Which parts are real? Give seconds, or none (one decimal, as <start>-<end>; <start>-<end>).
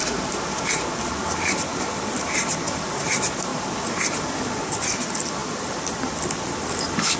0.0-1.7; 2.3-3.5; 4.5-5.4